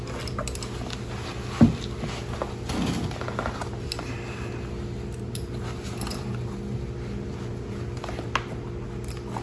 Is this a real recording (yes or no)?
yes